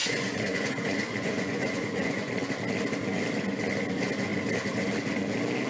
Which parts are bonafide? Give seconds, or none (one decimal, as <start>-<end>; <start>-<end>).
2.3-5.7

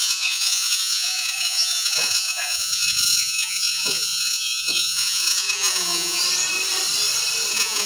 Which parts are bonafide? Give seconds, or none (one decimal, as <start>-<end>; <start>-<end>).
6.2-7.5

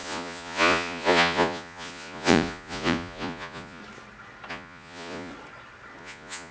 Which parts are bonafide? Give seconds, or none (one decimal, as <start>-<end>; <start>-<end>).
3.8-4.5; 5.3-6.0

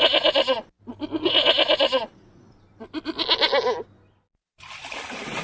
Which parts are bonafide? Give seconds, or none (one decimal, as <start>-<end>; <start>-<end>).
0.0-5.4